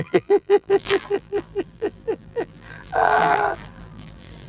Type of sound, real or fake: fake